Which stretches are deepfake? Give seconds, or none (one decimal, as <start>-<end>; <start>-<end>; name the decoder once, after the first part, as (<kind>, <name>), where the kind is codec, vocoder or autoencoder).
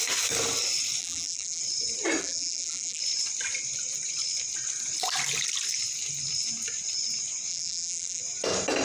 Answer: 1.0-1.6 (vocoder, BigVGAN v2); 2.2-3.0; 7.5-8.2